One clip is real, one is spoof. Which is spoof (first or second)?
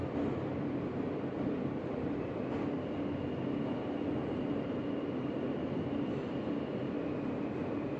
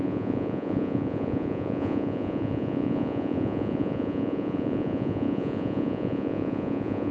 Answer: second